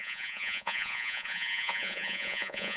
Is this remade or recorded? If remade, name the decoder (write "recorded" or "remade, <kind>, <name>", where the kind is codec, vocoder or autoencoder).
remade, vocoder, Vocos